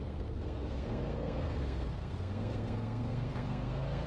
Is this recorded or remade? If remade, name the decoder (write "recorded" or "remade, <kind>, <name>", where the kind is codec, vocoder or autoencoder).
remade, codec, SNAC